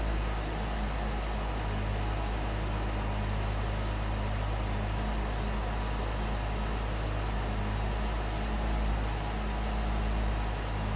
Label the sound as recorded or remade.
recorded